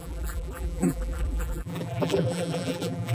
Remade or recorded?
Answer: remade